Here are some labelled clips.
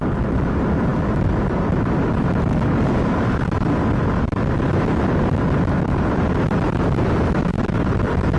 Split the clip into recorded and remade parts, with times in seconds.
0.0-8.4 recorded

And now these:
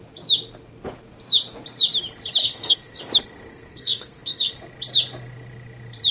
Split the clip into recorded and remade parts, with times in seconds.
0.0-2.4 recorded; 2.4-3.0 remade; 3.0-3.5 recorded; 3.5-4.5 remade; 4.5-6.1 recorded

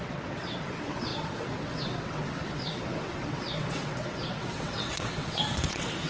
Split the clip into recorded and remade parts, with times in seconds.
0.0-6.1 remade

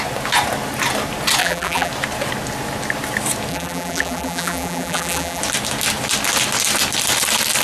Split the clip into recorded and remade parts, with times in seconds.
0.0-1.4 recorded; 1.4-1.9 remade; 1.9-3.5 recorded; 3.5-5.4 remade; 5.4-7.6 recorded